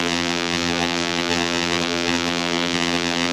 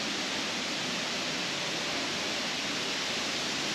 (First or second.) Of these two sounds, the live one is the second